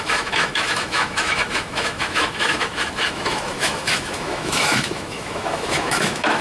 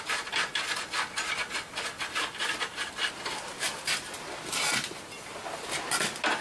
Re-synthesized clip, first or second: first